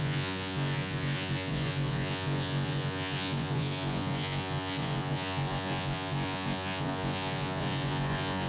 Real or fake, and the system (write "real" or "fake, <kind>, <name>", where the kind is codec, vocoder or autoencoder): fake, vocoder, Vocos